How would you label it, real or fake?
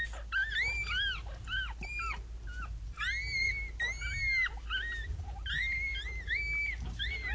real